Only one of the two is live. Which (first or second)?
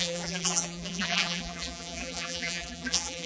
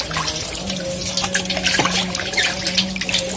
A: second